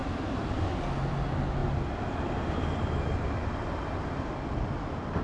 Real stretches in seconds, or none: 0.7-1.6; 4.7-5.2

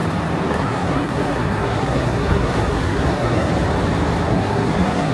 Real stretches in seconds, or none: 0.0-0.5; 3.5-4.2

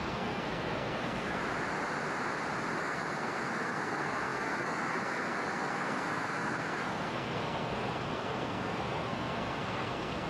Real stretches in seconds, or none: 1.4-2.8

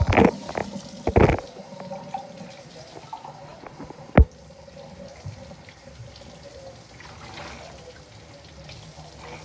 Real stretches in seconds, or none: 0.0-9.4

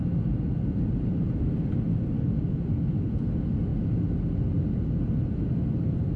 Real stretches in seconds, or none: 0.0-6.2

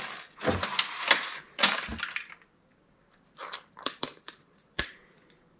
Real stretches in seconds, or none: 0.0-3.4; 4.8-5.6

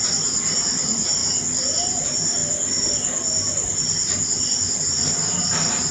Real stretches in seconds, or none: 1.2-2.0; 2.4-4.8